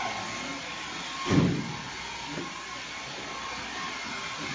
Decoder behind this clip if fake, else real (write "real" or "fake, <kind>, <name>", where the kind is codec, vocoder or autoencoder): real